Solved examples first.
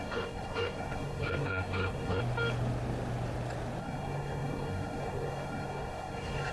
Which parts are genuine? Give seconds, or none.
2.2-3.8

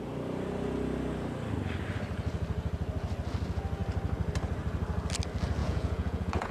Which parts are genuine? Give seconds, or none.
0.0-5.6